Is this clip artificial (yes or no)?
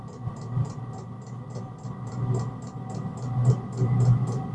no